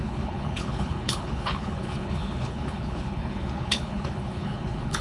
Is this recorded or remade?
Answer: remade